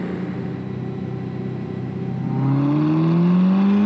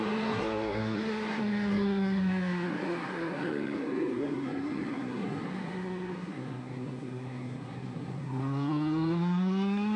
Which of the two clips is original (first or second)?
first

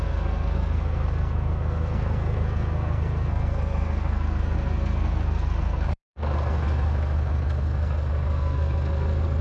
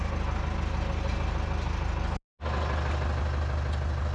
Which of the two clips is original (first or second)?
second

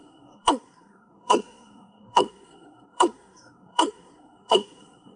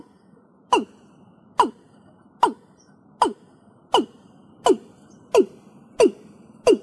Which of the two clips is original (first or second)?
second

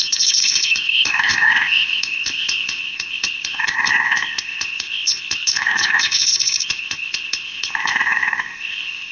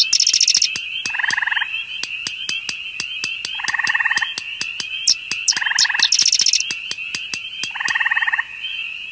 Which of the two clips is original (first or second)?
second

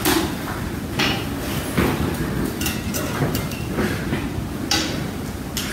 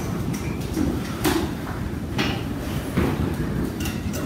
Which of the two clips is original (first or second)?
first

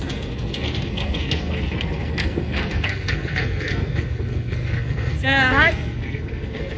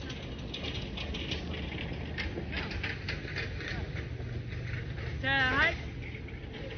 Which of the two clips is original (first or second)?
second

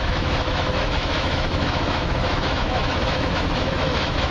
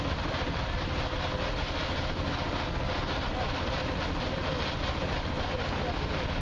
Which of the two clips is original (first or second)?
second